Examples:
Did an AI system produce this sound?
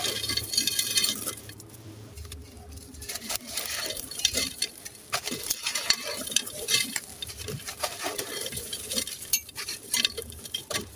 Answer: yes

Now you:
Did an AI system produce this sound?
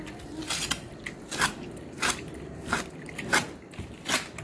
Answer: no